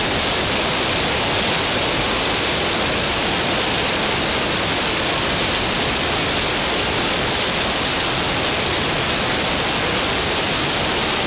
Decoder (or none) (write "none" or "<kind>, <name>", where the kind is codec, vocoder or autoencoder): none